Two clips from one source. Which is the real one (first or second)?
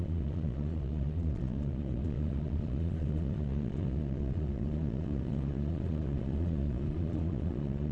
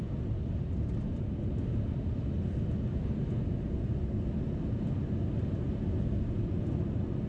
second